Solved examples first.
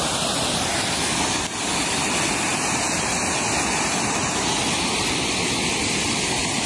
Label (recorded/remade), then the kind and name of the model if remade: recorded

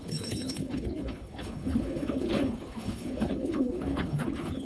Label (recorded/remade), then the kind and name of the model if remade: remade, codec, HILCodec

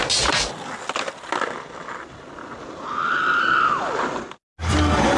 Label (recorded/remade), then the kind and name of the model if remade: recorded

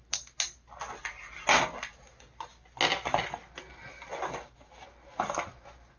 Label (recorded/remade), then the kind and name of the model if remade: recorded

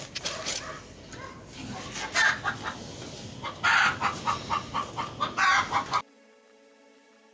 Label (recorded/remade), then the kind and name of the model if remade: recorded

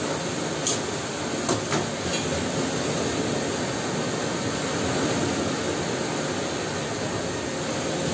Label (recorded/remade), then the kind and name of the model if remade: recorded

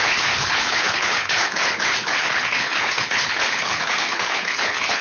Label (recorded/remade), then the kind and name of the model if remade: remade, codec, HILCodec